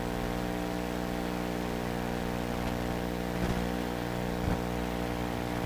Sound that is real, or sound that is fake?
real